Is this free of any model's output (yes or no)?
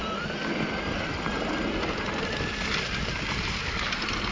yes